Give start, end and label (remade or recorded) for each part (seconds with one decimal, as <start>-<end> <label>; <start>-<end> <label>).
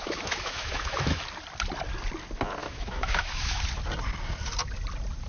0.0-1.2 remade; 1.2-2.6 recorded; 2.6-3.6 remade; 3.6-5.3 recorded